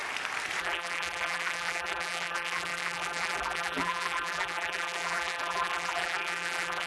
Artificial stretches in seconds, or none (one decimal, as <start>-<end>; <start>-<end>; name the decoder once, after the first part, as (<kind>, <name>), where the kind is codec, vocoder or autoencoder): 0.6-6.9 (vocoder, BigVGAN v2)

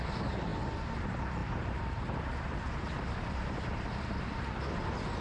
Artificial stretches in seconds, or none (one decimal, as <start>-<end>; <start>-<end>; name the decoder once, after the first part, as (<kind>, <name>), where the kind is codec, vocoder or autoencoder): 1.4-4.2 (vocoder, BigVGAN v2)

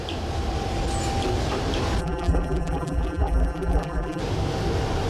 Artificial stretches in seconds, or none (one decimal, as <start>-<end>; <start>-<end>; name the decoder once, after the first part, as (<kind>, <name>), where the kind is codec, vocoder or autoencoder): 2.0-4.2 (vocoder, BigVGAN v2)

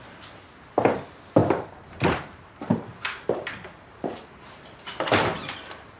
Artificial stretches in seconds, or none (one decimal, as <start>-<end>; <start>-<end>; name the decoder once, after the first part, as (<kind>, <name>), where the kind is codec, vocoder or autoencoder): 1.4-4.9 (vocoder, BigVGAN v2)

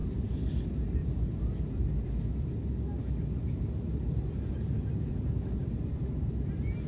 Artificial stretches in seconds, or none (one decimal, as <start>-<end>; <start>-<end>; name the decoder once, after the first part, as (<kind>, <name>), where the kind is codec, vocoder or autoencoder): 0.0-0.6 (vocoder, BigVGAN v2); 5.6-6.9

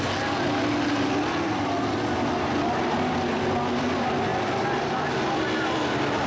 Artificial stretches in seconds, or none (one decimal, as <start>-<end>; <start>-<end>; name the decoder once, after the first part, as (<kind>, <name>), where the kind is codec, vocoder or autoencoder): 4.3-6.3 (vocoder, BigVGAN v2)

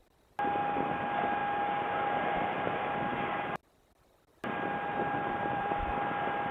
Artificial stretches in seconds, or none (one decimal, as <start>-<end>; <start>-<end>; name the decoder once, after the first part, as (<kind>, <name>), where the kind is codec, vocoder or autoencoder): 0.0-3.1 (vocoder, BigVGAN v2); 5.3-6.5